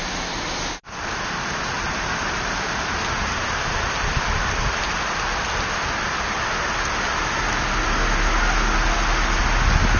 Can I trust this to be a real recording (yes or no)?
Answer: yes